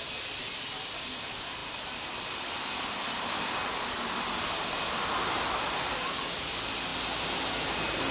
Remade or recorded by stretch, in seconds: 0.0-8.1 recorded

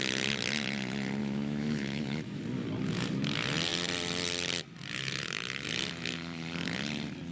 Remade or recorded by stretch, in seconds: 0.0-1.2 recorded; 1.2-2.4 remade; 2.4-7.3 recorded

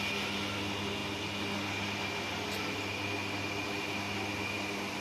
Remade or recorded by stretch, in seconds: 0.0-5.0 recorded

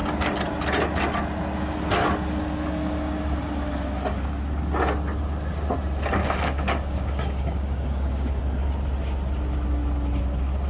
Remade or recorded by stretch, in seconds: 0.0-6.2 recorded; 6.2-8.4 remade; 8.4-10.7 recorded

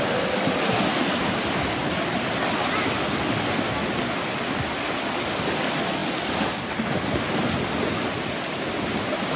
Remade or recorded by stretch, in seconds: 0.0-9.4 recorded

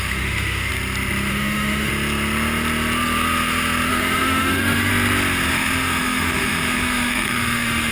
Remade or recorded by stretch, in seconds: 0.0-0.7 remade; 0.7-1.3 recorded; 1.3-1.9 remade; 1.9-3.9 recorded; 3.9-4.9 remade; 4.9-5.5 recorded; 5.5-7.9 remade

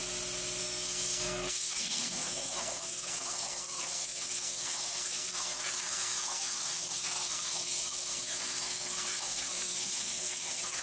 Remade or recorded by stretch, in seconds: 0.0-0.6 recorded; 0.6-10.8 remade

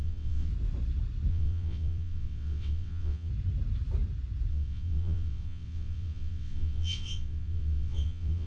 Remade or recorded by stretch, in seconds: 0.0-0.5 remade; 0.5-1.3 recorded; 1.3-3.3 remade; 3.3-4.5 recorded; 4.5-8.5 remade